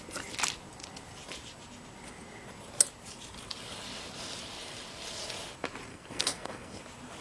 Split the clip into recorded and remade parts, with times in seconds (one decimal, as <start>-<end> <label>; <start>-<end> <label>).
0.0-5.9 recorded; 5.9-6.8 remade; 6.8-7.2 recorded